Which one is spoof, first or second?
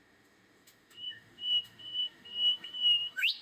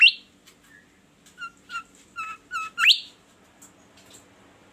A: first